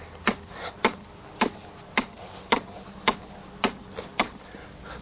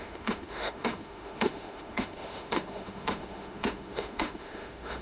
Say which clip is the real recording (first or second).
first